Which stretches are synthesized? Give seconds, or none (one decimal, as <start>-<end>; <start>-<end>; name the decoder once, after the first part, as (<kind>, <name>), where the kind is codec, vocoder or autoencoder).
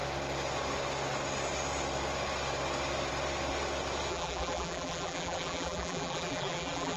4.1-7.0 (vocoder, BigVGAN v2)